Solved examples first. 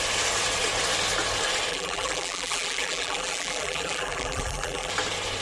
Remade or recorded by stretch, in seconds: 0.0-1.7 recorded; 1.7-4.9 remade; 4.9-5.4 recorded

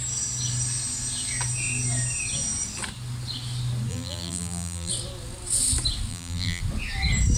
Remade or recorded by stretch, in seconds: 0.0-3.9 recorded; 3.9-4.9 remade; 4.9-6.1 recorded; 6.1-6.6 remade; 6.6-7.4 recorded